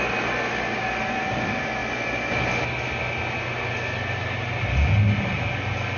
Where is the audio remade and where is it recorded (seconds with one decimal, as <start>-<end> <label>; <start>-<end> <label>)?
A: 0.0-6.0 recorded